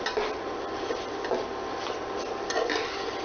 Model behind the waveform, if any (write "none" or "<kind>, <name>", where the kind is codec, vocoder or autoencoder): none